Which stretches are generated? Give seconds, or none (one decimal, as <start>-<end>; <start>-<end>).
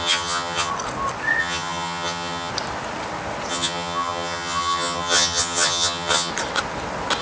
0.0-0.7; 1.4-2.5; 3.5-6.3